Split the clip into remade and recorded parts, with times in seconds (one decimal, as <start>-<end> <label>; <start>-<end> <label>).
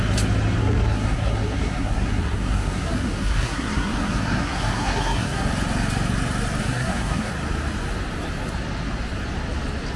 0.0-0.6 recorded; 0.6-5.5 remade; 5.5-6.6 recorded; 6.6-7.3 remade; 7.3-10.0 recorded